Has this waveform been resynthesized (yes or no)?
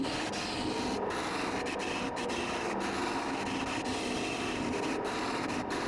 no